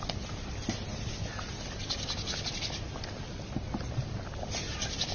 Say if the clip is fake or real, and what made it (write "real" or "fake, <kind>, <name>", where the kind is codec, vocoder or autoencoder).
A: real